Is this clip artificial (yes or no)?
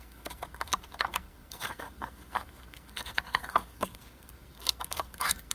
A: yes